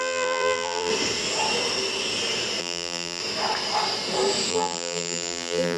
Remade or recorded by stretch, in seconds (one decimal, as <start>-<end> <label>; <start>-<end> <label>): 0.0-0.9 remade; 0.9-2.6 recorded; 2.6-3.2 remade; 3.2-4.5 recorded; 4.5-5.8 remade